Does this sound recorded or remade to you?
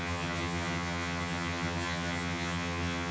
remade